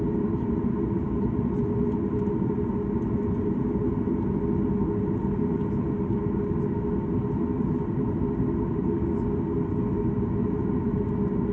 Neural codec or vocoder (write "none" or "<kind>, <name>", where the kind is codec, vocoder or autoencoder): none